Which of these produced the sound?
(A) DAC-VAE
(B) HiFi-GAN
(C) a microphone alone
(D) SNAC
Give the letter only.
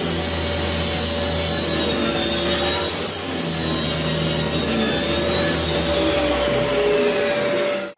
C